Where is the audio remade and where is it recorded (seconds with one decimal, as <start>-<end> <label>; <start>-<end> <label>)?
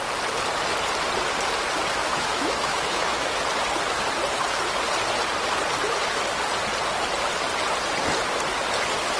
0.0-2.0 recorded; 2.0-3.4 remade; 3.4-9.2 recorded